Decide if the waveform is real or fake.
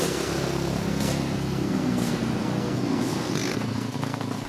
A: fake